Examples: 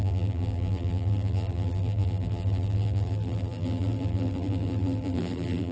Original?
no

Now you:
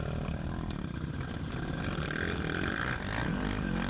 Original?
yes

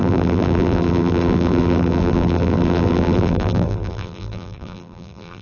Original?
no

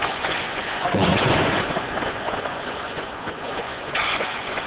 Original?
no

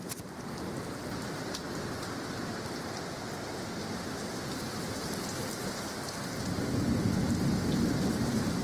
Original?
yes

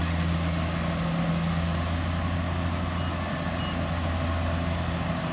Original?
yes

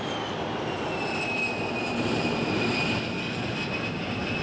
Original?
yes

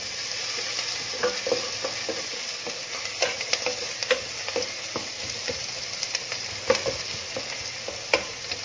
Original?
yes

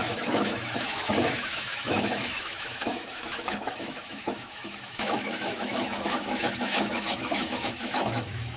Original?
no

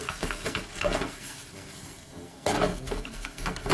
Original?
no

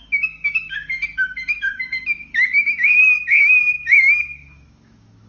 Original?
no